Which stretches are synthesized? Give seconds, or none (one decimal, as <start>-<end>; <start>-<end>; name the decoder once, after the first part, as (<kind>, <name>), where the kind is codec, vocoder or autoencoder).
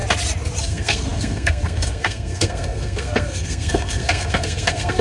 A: 0.6-5.0 (codec, SNAC)